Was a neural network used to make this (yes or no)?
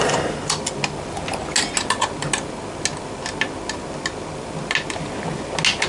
no